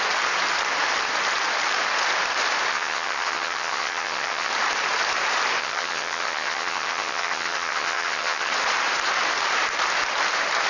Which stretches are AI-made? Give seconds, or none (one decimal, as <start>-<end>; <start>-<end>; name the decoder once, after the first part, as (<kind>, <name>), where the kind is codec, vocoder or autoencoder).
2.7-4.5 (vocoder, HiFi-GAN); 5.6-8.5